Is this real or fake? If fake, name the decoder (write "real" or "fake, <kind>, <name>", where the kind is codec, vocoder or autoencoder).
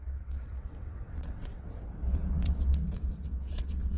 fake, vocoder, WaveNeXt